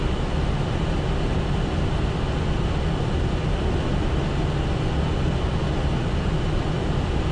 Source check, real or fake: real